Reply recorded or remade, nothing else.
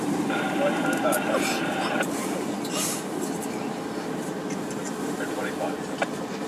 remade